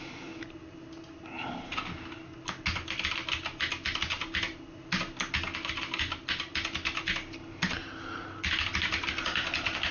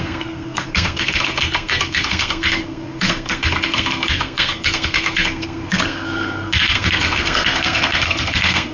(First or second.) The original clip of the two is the first